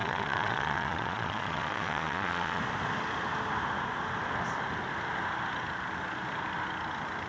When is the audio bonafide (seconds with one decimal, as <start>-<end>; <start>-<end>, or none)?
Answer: 2.6-7.3